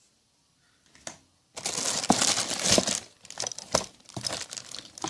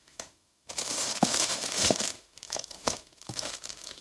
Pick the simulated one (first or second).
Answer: second